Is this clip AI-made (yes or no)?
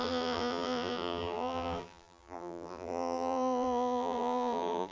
yes